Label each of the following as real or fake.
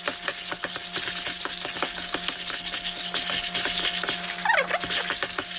real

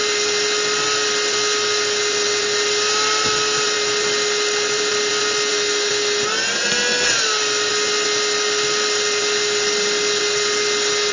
real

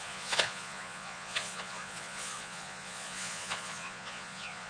fake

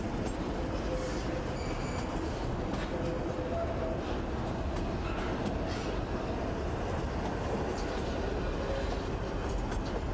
real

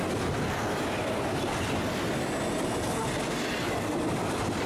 real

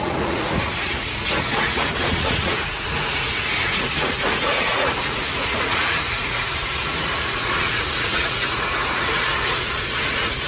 fake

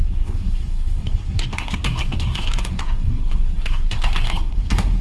fake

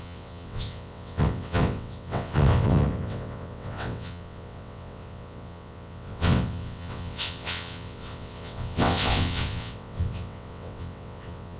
fake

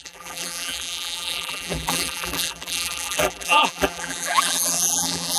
fake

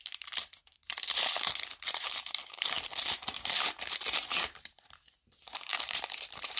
fake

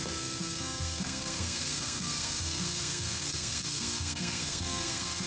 fake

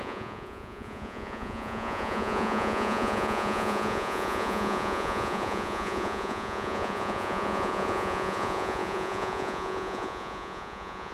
fake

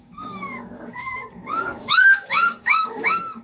fake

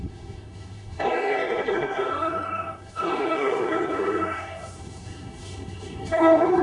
fake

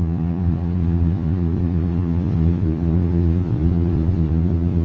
fake